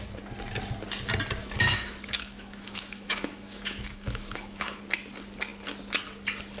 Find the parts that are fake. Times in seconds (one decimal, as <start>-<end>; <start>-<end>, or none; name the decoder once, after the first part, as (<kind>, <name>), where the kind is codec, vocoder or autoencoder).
1.4-4.8 (autoencoder, DAC-VAE)